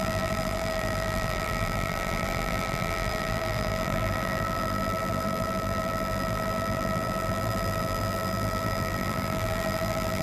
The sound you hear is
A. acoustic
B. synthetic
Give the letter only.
B